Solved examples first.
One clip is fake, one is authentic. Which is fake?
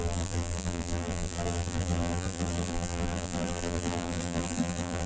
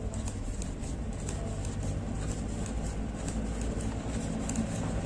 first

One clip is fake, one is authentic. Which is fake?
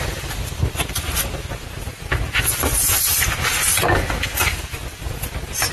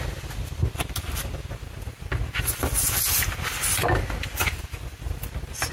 first